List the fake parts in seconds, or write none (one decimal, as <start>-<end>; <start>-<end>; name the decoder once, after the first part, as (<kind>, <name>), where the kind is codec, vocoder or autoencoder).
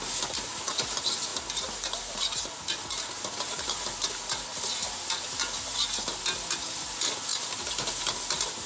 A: none